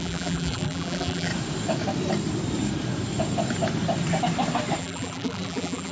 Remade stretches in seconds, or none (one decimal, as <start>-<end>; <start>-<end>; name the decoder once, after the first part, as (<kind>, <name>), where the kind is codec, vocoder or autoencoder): 0.0-1.3 (vocoder, BigVGAN v2); 4.8-5.9